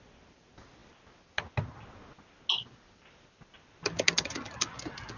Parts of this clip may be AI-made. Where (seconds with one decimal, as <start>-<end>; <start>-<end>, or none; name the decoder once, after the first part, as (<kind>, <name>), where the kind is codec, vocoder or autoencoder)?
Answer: none